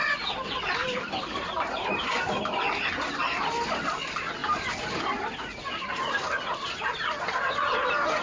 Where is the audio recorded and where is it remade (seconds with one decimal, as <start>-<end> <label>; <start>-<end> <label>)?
0.0-0.8 recorded; 0.8-2.1 remade; 2.1-8.2 recorded